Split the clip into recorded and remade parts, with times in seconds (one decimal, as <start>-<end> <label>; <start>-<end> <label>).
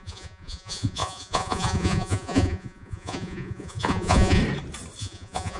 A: 0.0-4.4 remade; 4.4-5.0 recorded; 5.0-5.6 remade